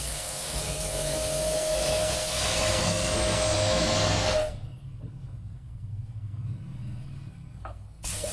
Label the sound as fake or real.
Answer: fake